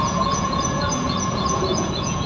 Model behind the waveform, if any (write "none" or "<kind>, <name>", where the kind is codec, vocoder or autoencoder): vocoder, Vocos